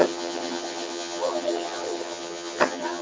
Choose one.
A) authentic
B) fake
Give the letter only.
B